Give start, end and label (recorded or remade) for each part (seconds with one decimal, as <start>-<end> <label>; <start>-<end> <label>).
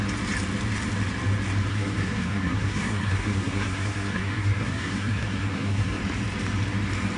0.0-1.7 recorded; 1.7-6.0 remade; 6.0-7.2 recorded